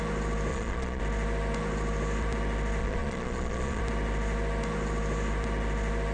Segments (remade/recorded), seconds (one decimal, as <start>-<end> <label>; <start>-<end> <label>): 0.0-0.5 recorded; 0.5-1.0 remade; 1.0-2.8 recorded; 2.8-3.8 remade; 3.8-6.1 recorded